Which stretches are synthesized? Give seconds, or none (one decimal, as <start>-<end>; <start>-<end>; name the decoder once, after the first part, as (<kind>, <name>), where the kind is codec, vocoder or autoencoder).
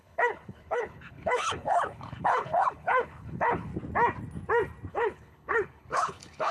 0.0-3.7 (codec, HILCodec); 4.9-6.5